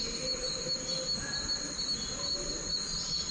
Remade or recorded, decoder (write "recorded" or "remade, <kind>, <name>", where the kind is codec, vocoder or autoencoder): recorded